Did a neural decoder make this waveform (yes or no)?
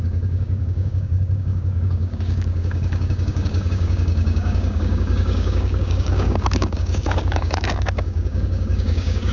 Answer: yes